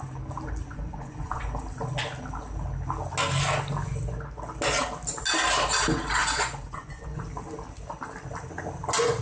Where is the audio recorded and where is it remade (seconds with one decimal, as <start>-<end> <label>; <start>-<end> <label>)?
0.0-0.7 recorded; 0.7-1.6 remade; 1.6-6.2 recorded; 6.2-7.2 remade; 7.2-9.2 recorded